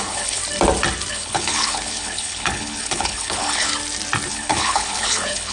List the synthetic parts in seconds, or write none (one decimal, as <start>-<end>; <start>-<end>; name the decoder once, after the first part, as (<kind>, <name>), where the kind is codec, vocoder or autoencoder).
0.0-0.4 (codec, HILCodec); 1.1-3.7; 4.3-5.5

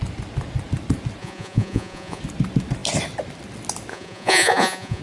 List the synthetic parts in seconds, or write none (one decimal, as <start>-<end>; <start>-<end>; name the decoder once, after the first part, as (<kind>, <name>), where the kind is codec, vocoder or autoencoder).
1.2-2.2 (vocoder, Vocos); 3.9-5.0

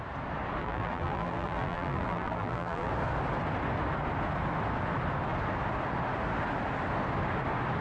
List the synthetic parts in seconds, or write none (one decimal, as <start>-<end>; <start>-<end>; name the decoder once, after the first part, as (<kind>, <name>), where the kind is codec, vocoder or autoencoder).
0.6-2.9 (vocoder, BigVGAN v2)

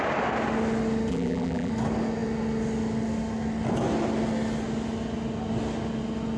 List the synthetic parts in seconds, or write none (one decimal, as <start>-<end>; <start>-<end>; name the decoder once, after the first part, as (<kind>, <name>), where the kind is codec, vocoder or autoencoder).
1.1-1.7 (vocoder, BigVGAN v2)

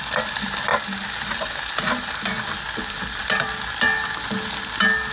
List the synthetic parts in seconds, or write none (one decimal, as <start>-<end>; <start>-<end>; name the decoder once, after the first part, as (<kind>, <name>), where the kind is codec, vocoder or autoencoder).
none

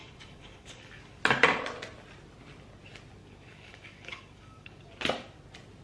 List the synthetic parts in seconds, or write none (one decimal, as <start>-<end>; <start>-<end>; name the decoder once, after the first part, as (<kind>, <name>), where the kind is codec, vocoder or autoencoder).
0.0-1.2 (codec, DAC); 3.2-4.8